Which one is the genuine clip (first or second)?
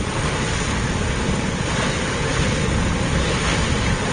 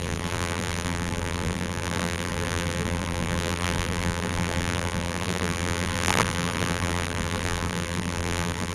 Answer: first